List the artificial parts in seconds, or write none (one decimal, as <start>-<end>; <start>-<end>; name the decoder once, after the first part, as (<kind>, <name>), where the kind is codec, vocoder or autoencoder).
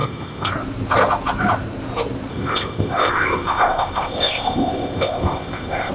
0.0-0.5 (codec, ZipCodec); 2.3-5.9